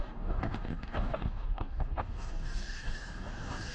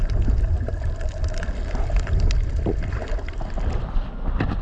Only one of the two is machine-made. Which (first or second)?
first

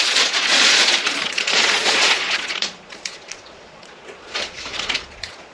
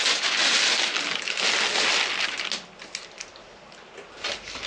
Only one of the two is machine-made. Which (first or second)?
first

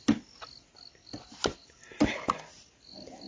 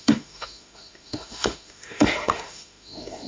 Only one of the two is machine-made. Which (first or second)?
second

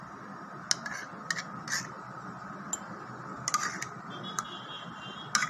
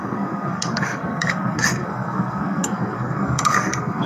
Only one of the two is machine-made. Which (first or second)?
second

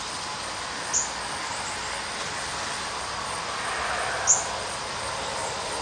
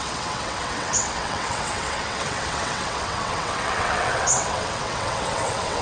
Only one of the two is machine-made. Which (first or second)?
second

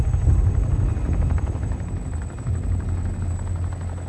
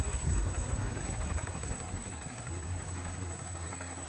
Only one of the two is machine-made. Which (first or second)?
second